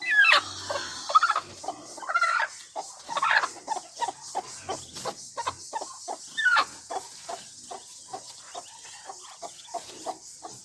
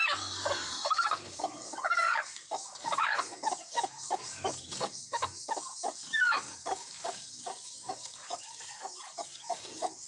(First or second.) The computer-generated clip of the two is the second